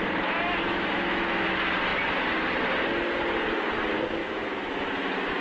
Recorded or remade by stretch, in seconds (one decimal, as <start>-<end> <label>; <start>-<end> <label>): 0.0-0.6 recorded; 0.6-1.5 remade; 1.5-4.2 recorded; 4.2-4.7 remade; 4.7-5.4 recorded

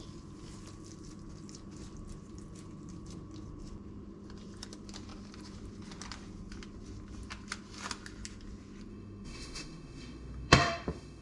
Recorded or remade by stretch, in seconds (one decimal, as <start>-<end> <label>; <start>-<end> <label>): 0.0-8.9 recorded; 8.9-11.2 remade